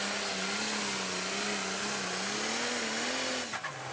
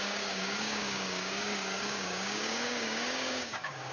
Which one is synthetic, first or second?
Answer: second